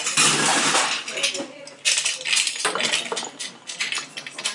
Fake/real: real